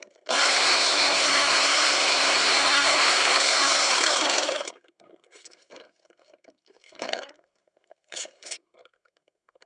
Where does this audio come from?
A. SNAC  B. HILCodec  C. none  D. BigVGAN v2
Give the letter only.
A